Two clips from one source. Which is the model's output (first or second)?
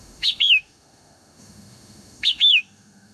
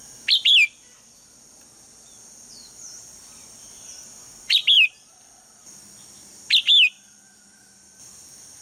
first